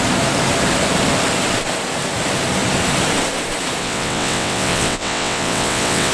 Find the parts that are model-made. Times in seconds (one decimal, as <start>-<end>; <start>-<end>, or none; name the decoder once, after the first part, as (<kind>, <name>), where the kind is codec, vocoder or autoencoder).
3.8-6.1 (vocoder, WaveNeXt)